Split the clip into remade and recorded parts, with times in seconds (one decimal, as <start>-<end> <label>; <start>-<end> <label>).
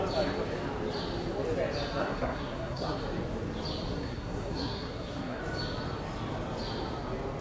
0.0-2.0 recorded; 2.0-3.0 remade; 3.0-3.9 recorded; 3.9-5.4 remade; 5.4-7.4 recorded